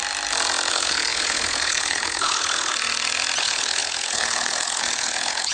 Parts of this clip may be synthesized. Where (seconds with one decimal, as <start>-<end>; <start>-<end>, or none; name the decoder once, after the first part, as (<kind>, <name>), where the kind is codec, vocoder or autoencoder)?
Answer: 0.7-2.7 (codec, HILCodec); 3.4-5.5